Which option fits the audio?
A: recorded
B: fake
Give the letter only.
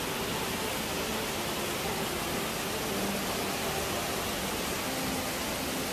A